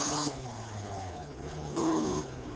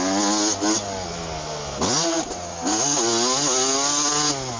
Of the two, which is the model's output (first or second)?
first